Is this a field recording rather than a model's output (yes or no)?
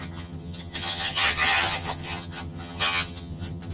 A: no